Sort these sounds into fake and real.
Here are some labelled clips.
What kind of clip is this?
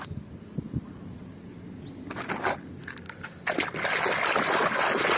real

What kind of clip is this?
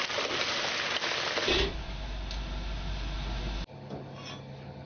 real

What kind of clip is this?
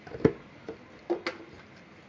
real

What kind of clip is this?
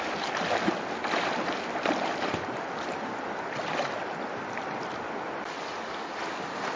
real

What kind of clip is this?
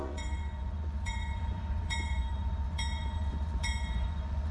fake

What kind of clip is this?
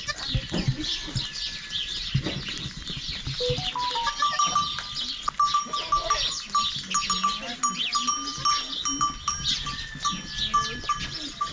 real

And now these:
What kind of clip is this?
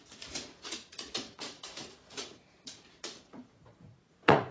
fake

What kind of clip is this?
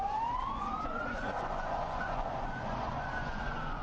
fake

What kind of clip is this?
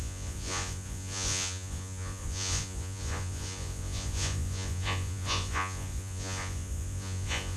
fake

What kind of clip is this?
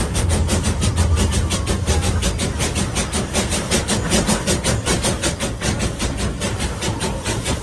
real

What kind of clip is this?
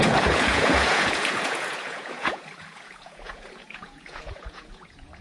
fake